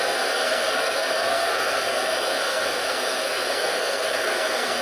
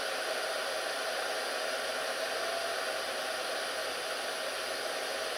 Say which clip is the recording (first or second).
second